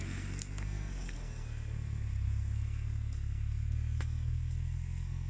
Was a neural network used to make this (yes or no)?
yes